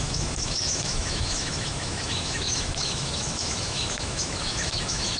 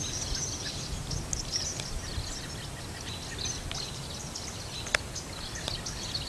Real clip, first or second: second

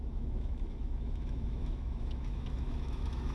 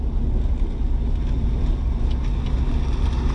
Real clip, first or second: second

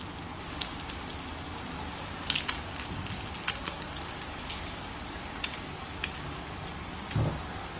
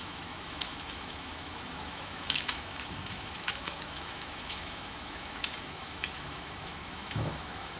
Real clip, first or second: first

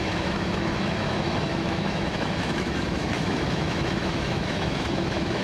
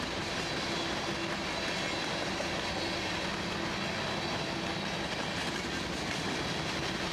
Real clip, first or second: second